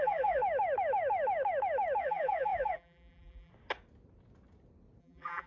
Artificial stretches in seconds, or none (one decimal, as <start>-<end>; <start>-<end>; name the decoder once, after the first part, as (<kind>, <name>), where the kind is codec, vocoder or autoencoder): 0.0-0.4 (vocoder, BigVGAN v2); 2.0-3.5; 5.0-5.5